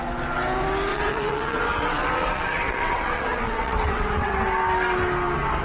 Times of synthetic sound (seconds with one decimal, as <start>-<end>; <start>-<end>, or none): 0.9-4.3

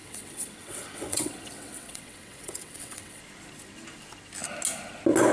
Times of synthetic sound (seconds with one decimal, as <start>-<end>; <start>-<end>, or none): 0.0-3.2